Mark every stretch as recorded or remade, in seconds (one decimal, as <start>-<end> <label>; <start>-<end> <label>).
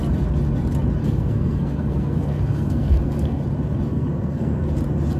0.0-1.0 recorded; 1.0-3.4 remade; 3.4-3.9 recorded; 3.9-4.7 remade; 4.7-5.2 recorded